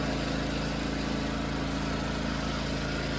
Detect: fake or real real